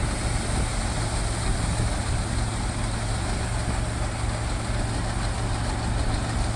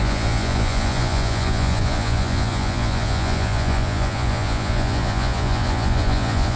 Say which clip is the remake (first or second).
second